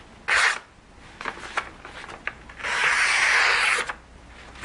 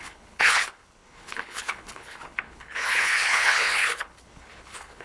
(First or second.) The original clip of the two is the first